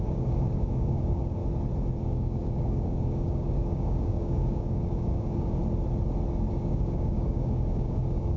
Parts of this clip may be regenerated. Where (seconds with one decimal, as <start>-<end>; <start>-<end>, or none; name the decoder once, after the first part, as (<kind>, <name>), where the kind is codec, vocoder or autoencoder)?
0.0-1.4 (codec, DAC); 2.0-5.6; 6.5-8.4